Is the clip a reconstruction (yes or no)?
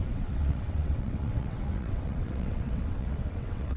yes